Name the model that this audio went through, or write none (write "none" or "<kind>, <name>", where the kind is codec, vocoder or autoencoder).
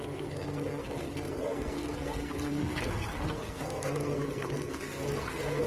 codec, SNAC